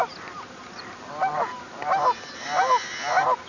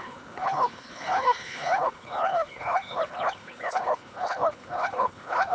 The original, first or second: first